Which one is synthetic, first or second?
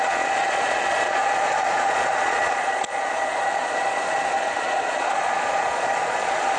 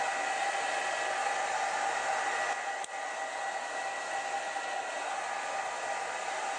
first